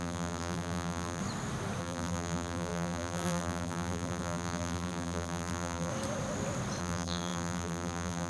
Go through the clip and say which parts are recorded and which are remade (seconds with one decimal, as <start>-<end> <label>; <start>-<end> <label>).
0.0-1.2 remade; 1.2-1.8 recorded; 1.8-5.9 remade; 5.9-6.8 recorded; 6.8-8.3 remade